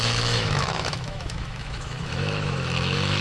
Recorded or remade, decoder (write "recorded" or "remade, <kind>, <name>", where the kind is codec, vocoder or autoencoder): remade, autoencoder, DAC-VAE